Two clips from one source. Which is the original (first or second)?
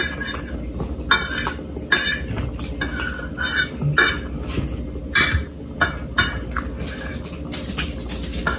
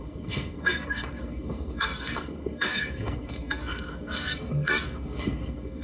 first